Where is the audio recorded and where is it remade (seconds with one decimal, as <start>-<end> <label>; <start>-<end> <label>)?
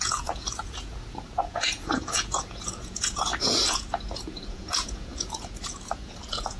0.0-6.6 remade